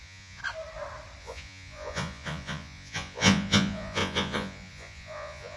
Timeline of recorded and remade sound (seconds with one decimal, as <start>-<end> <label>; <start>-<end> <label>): 0.0-0.4 remade; 0.4-1.2 recorded; 1.2-5.6 remade